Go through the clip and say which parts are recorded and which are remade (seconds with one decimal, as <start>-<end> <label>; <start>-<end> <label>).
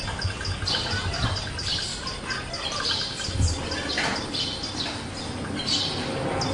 0.0-6.5 recorded